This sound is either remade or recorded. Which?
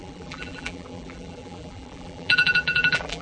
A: remade